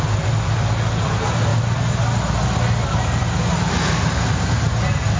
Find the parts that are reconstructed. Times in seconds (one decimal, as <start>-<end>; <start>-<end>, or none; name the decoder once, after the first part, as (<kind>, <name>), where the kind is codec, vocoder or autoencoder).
none